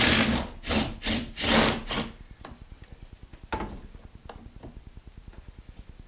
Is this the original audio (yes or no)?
yes